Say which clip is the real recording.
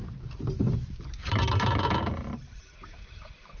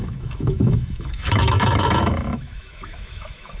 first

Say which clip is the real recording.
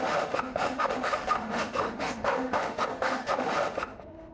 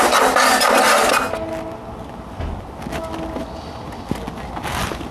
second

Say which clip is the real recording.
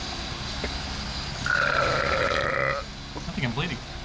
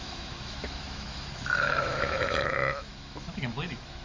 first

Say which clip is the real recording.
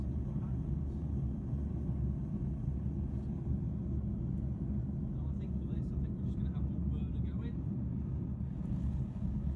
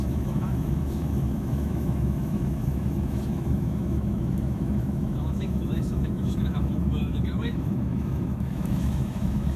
first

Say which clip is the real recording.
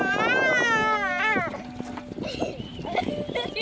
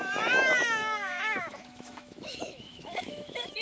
first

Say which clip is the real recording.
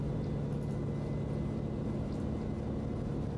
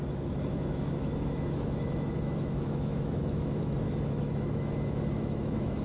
first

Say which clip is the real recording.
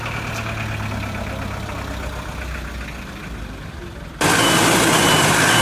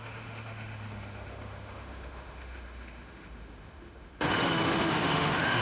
first